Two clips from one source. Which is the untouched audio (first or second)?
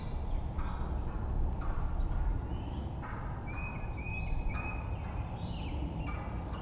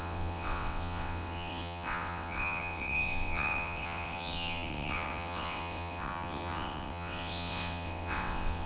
first